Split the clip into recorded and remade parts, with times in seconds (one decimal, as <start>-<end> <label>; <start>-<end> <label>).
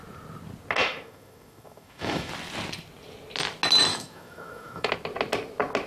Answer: 0.0-0.8 recorded; 0.8-2.3 remade; 2.3-3.9 recorded; 3.9-4.9 remade; 4.9-5.9 recorded